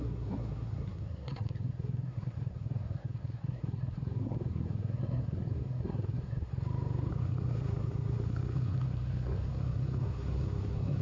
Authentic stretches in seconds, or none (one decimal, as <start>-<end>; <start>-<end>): 6.5-7.1